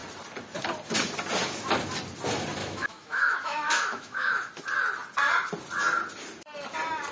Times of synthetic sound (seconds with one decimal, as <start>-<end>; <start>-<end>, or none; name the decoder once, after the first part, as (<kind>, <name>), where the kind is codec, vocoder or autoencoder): 2.6-4.5 (autoencoder, DAC-VAE)